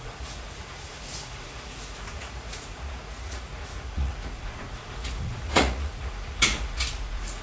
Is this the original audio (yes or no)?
no